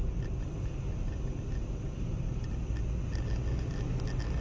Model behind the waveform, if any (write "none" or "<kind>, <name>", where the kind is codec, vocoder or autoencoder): none